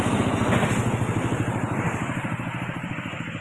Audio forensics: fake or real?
real